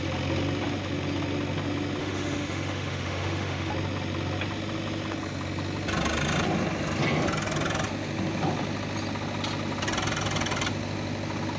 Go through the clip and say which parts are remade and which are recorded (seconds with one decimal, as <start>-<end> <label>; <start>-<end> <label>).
0.0-2.0 recorded; 2.0-3.7 remade; 3.7-11.6 recorded